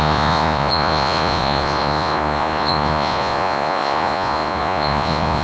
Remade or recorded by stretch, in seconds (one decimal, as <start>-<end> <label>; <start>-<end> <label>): 0.0-5.4 remade